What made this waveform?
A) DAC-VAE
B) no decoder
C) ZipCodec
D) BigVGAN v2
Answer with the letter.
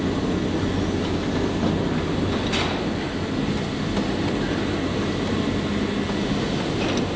B